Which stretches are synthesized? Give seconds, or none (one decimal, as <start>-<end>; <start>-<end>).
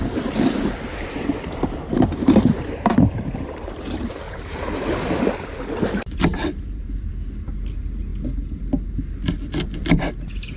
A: 0.9-4.6; 6.3-7.1